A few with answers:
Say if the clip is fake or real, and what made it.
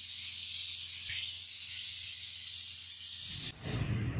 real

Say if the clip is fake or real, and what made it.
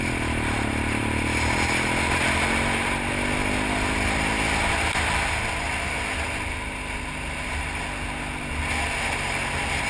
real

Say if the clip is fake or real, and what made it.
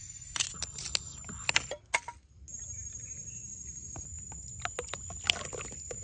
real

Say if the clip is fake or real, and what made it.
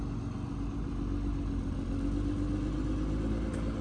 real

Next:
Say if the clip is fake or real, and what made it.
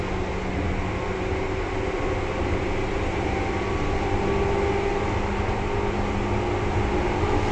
real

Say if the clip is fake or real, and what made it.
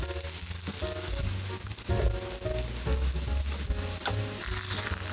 real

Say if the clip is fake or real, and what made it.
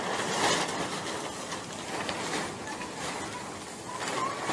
real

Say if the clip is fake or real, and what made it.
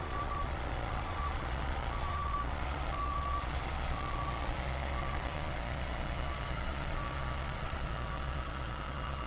fake, vocoder, Vocos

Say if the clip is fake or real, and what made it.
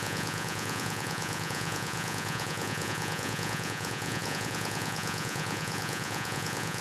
fake, vocoder, Vocos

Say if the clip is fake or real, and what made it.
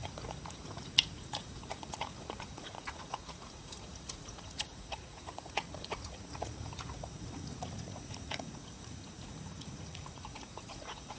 fake, vocoder, Vocos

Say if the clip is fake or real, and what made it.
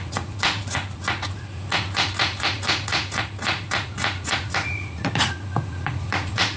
fake, vocoder, Vocos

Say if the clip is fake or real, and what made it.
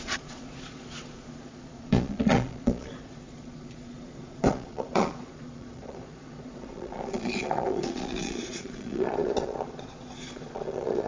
fake, vocoder, Vocos